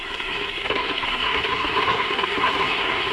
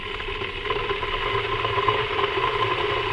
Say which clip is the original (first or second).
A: second